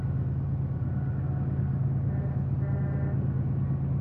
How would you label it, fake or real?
real